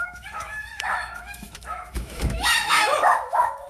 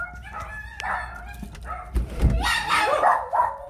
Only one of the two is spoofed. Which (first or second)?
first